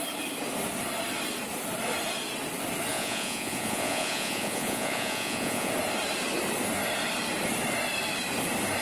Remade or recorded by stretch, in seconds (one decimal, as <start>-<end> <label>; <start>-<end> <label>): 0.0-2.9 recorded; 2.9-5.7 remade; 5.7-8.8 recorded